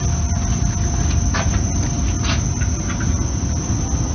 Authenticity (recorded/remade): recorded